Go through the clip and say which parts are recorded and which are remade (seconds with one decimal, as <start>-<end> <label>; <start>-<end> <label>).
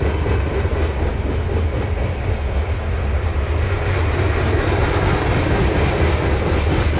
0.0-7.0 recorded